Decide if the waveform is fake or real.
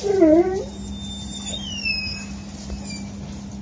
real